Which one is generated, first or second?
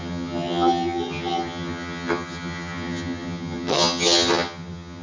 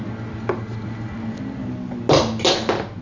first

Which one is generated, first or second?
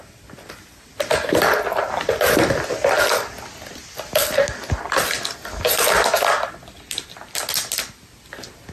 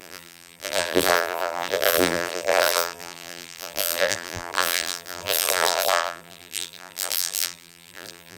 second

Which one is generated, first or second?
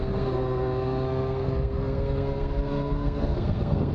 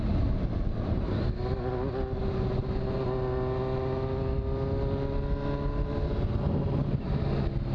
first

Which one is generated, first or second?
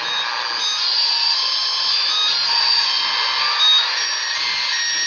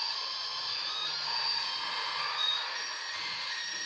second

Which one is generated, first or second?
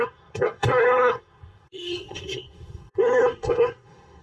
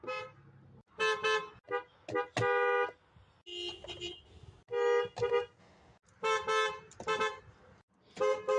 first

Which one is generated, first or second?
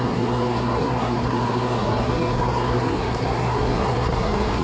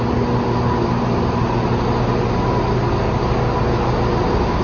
first